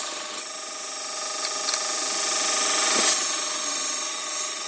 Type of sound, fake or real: real